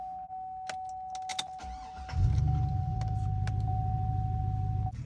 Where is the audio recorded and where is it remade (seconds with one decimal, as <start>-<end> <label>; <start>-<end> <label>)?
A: 0.0-5.1 recorded